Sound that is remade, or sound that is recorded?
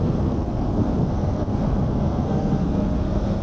remade